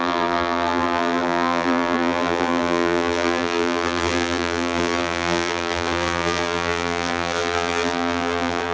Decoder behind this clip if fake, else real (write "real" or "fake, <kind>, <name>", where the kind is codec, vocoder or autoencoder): fake, vocoder, BigVGAN v2